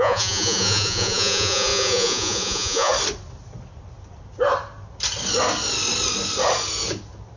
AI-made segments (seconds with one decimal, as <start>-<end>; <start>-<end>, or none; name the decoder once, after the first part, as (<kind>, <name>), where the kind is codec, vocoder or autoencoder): 0.0-2.9 (vocoder, Vocos)